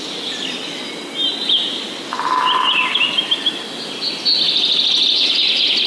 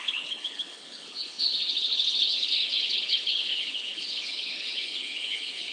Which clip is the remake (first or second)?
second